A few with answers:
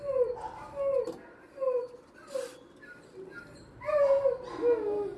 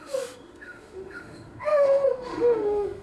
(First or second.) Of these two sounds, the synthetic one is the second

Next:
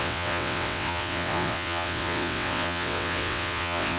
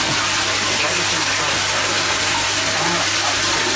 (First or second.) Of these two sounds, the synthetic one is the first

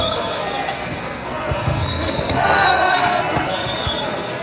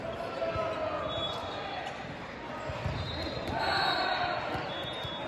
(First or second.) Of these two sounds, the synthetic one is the first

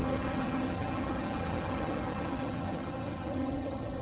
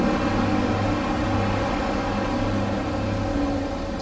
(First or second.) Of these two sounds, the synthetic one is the first